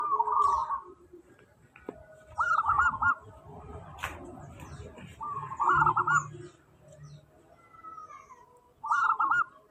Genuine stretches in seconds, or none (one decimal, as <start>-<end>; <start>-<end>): 0.0-0.6; 1.3-3.0; 4.4-5.1; 5.7-9.7